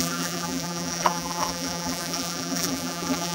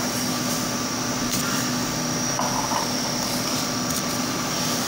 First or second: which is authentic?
second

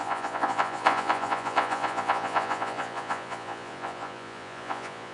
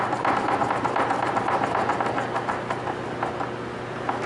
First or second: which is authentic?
second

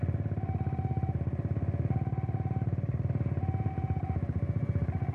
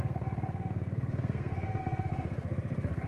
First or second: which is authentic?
first